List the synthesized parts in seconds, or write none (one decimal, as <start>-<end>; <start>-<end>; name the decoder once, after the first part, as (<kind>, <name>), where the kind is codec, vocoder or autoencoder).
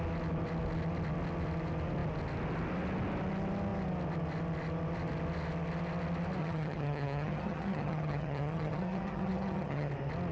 6.4-9.9 (vocoder, HiFi-GAN)